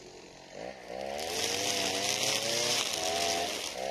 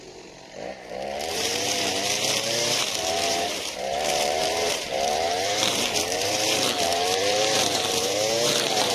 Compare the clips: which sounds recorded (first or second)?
first